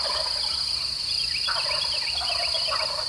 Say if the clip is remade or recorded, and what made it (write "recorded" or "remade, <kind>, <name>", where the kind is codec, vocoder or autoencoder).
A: recorded